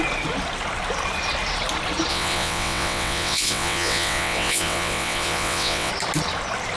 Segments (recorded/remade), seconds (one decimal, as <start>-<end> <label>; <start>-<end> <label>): 0.0-2.1 recorded; 2.1-5.9 remade; 5.9-6.8 recorded